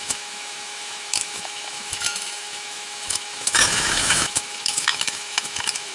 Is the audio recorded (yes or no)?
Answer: no